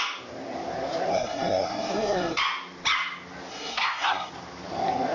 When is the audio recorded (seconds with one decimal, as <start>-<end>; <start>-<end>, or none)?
0.0-1.1; 2.4-3.5; 4.3-5.1